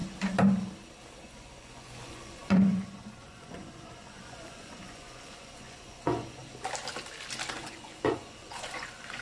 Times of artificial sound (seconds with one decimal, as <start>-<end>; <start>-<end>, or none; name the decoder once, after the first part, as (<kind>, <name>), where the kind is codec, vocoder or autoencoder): 1.2-6.4 (vocoder, Vocos); 7.5-9.2